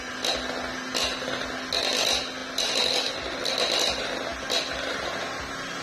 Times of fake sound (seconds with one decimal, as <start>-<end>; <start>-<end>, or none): none